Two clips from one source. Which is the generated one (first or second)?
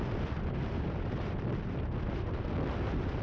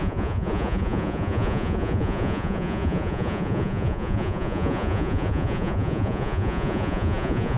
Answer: second